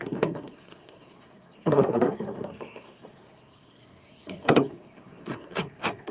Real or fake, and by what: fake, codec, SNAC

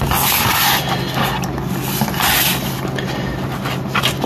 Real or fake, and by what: real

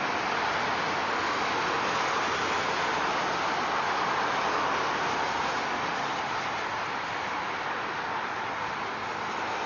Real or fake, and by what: real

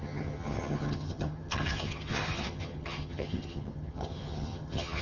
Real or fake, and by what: fake, vocoder, HiFi-GAN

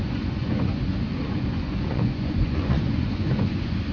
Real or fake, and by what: fake, vocoder, Vocos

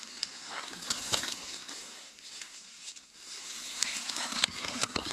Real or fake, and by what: fake, codec, SNAC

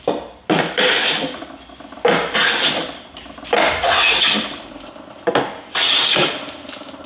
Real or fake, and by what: real